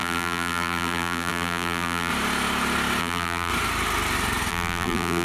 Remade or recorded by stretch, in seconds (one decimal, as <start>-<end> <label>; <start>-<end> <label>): 0.0-2.1 remade; 2.1-3.0 recorded; 3.0-3.5 remade; 3.5-4.5 recorded; 4.5-5.2 remade